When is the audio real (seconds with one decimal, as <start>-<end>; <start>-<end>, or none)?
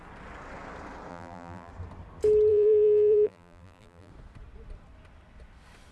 0.0-1.1; 1.7-2.5; 4.1-5.9